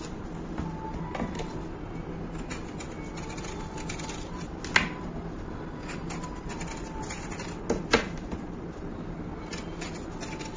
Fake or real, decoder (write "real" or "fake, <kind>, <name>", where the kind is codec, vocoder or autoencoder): real